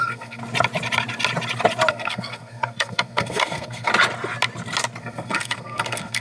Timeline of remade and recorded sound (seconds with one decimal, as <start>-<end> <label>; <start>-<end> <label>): 0.0-0.4 remade; 0.4-1.9 recorded; 1.9-3.9 remade; 3.9-5.0 recorded; 5.0-6.2 remade